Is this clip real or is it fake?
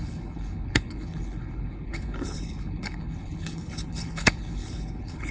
fake